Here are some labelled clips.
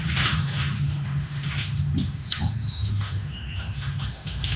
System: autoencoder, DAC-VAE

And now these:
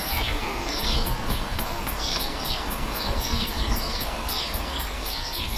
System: codec, SNAC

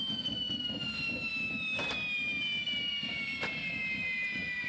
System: none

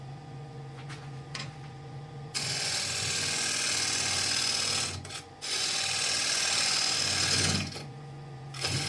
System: vocoder, Vocos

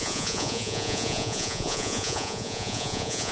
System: vocoder, Vocos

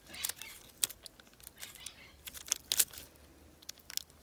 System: none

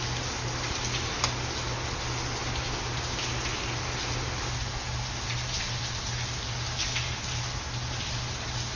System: none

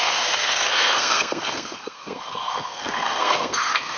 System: codec, SNAC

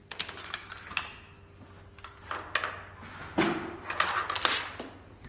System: none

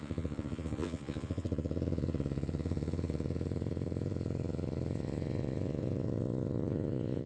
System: vocoder, Vocos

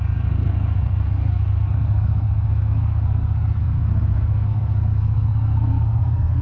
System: codec, SNAC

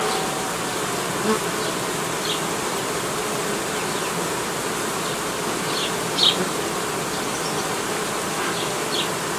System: none